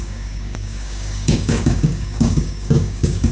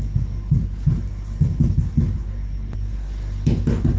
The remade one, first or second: first